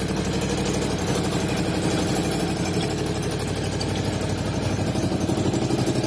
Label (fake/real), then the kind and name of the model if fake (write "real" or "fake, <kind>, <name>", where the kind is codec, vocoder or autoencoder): real